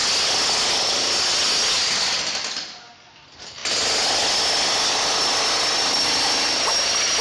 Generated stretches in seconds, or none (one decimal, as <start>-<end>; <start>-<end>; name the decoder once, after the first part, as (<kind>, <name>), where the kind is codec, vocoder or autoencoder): none